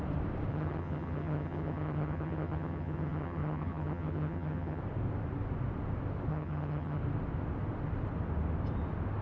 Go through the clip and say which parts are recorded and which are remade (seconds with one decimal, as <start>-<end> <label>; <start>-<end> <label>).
0.0-0.5 recorded; 0.5-4.8 remade; 4.8-6.3 recorded; 6.3-7.0 remade; 7.0-9.2 recorded